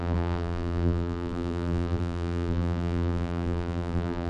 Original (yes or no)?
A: no